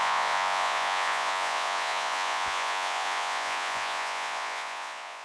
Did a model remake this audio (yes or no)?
yes